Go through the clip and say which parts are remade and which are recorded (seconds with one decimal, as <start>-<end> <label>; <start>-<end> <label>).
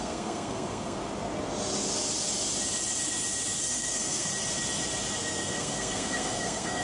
0.0-1.0 remade; 1.0-3.6 recorded; 3.6-4.3 remade; 4.3-5.2 recorded; 5.2-6.8 remade